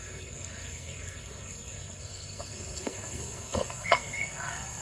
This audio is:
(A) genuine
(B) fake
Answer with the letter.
B